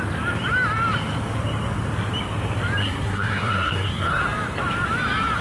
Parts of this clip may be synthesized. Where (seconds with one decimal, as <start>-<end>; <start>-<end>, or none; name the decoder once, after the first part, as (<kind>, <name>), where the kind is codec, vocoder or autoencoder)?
2.8-4.2 (codec, SNAC)